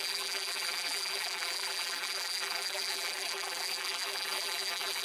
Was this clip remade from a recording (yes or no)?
yes